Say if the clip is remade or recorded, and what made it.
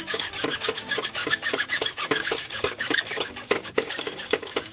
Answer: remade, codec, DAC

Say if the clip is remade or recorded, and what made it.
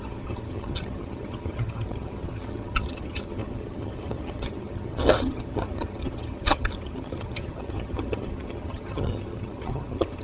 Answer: remade, vocoder, HiFi-GAN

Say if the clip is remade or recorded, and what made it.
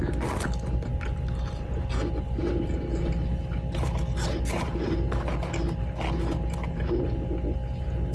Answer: recorded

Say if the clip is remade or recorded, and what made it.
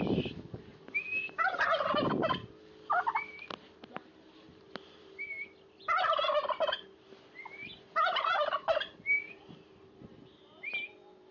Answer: recorded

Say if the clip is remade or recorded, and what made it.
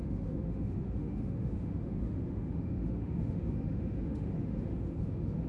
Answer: remade, autoencoder, DAC-VAE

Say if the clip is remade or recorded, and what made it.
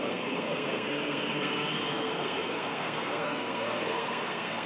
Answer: remade, codec, SNAC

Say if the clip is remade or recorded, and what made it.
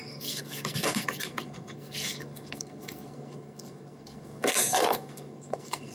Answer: remade, codec, SNAC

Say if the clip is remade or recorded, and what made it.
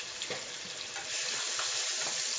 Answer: recorded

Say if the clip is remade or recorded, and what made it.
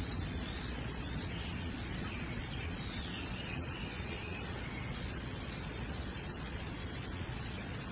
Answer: remade, vocoder, Vocos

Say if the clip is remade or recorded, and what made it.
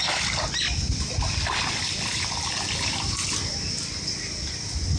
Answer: recorded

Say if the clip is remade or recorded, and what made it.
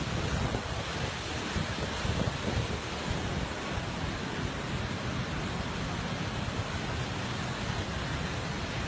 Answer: recorded